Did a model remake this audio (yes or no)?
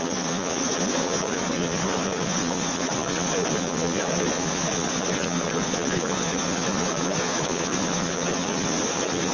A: yes